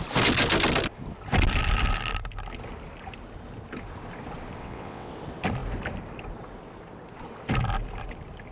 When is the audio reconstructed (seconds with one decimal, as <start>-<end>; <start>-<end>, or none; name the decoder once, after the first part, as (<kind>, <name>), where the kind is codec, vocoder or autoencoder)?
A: 4.6-5.1 (vocoder, WaveNeXt)